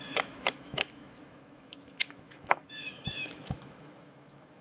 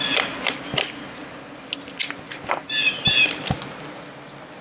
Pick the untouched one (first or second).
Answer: second